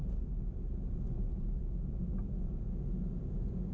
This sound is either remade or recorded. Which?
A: recorded